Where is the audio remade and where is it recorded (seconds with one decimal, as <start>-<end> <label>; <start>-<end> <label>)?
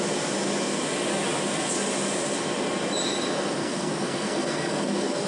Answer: 0.0-3.6 recorded; 3.6-5.3 remade